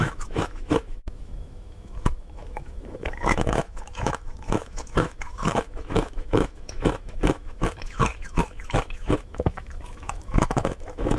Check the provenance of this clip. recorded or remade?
remade